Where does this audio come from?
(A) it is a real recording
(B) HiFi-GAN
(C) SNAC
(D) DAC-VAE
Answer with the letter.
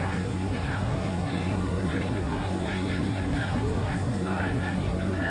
C